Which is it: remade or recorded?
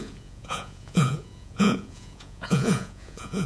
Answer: remade